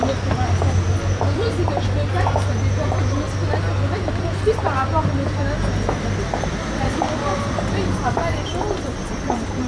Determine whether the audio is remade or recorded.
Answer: recorded